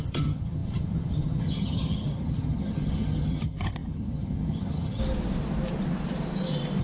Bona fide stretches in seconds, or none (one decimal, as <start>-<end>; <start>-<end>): 5.0-6.8